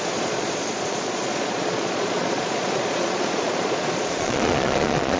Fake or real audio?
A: fake